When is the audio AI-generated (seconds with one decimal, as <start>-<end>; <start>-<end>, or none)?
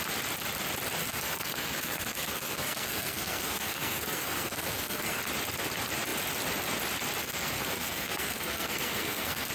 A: 1.0-5.2; 7.2-9.5